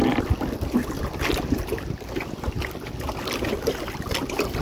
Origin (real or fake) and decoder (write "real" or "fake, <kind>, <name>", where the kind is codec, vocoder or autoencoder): real